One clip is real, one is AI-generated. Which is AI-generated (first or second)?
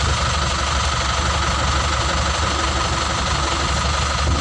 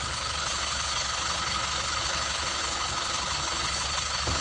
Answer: second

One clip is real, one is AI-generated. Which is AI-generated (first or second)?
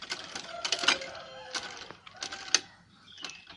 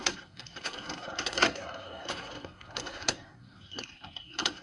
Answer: second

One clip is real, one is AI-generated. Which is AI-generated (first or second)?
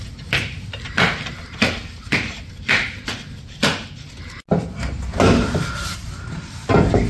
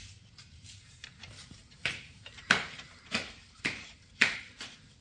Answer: second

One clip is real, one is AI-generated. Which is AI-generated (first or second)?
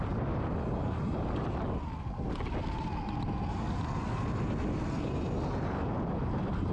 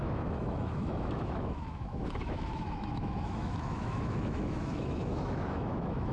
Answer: second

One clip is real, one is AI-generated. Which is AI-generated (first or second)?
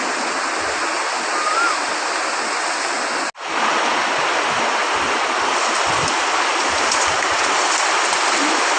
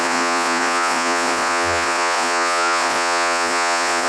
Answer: second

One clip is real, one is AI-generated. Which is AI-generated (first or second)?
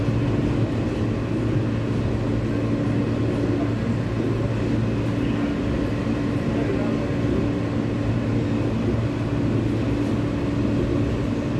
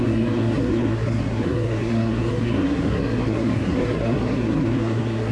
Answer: second